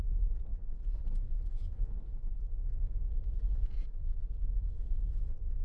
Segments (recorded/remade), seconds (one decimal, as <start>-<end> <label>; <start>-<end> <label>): 0.0-0.5 recorded; 0.5-3.6 remade; 3.6-5.6 recorded